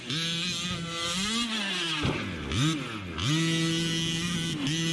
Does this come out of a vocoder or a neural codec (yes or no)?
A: no